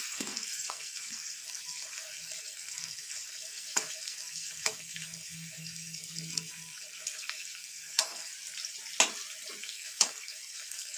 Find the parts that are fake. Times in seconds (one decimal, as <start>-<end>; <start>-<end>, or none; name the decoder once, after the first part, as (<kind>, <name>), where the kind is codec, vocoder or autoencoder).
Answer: 0.0-8.3 (codec, SNAC); 9.6-11.0